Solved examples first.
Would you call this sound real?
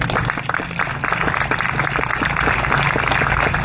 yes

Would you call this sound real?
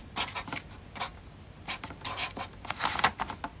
yes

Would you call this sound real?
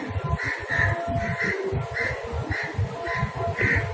yes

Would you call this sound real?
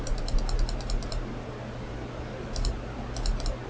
yes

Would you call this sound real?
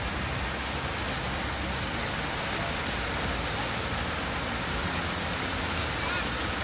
yes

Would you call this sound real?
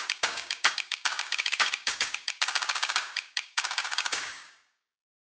no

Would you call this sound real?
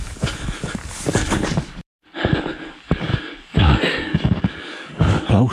no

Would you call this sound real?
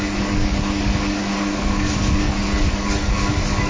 no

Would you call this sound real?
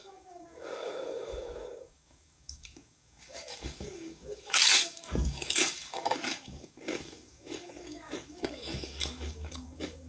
no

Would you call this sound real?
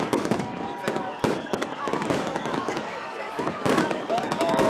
no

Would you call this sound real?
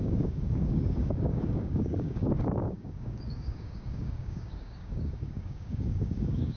no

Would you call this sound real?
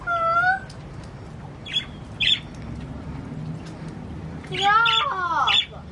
yes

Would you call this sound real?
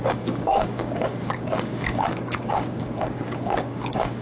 no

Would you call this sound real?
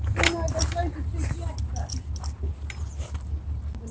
yes